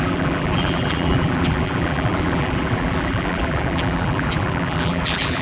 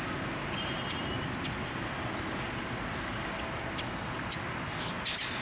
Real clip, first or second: second